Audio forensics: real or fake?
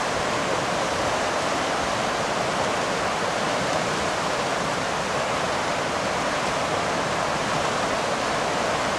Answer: real